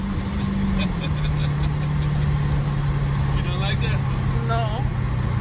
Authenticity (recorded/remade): recorded